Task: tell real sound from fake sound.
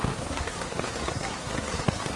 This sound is fake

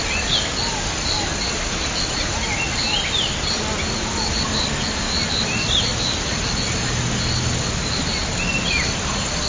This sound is real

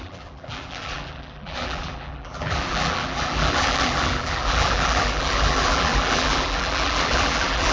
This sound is fake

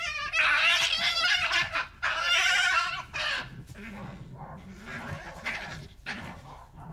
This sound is real